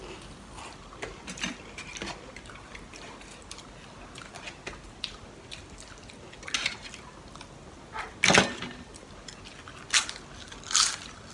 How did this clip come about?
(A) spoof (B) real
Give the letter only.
B